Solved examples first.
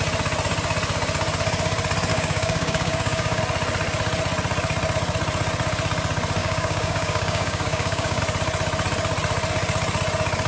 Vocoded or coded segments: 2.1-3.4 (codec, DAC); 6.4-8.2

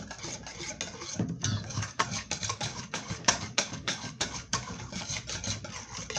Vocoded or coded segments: 1.4-5.1 (codec, DAC)

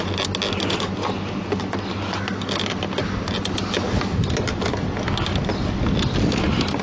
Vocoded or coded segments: none

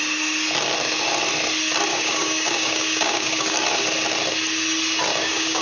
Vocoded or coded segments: 1.9-3.5 (codec, DAC); 5.1-5.6

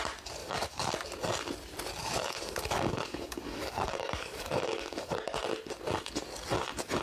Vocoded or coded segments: 0.4-0.9 (codec, DAC); 2.0-5.2

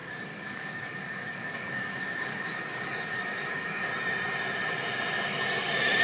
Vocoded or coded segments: 0.0-3.9 (codec, DAC)

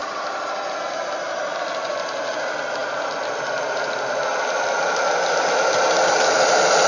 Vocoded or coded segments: none

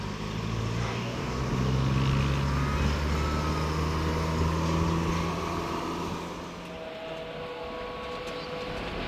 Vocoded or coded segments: 0.8-1.4 (codec, DAC)